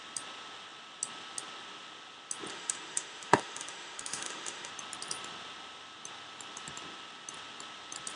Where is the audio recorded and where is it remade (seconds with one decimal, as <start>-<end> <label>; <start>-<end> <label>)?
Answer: 0.0-2.5 recorded; 2.5-4.7 remade; 4.7-8.2 recorded